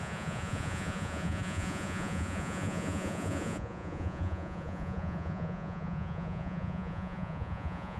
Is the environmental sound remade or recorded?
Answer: remade